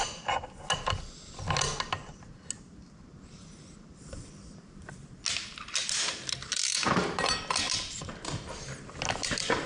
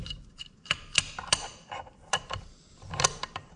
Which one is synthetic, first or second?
second